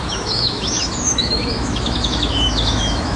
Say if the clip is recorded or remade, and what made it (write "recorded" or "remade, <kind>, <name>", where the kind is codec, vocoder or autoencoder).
remade, autoencoder, DAC-VAE